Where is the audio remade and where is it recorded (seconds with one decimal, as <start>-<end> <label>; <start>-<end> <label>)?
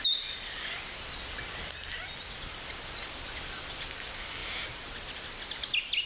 0.0-6.1 recorded